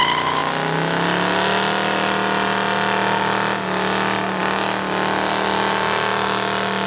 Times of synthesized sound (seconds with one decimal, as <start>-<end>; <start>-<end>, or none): none